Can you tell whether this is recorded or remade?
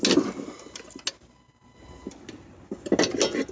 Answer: recorded